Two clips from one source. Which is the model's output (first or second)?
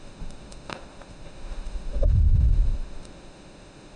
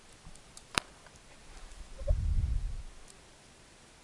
first